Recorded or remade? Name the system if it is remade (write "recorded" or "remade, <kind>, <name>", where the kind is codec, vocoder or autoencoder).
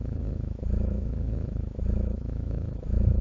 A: remade, autoencoder, DAC-VAE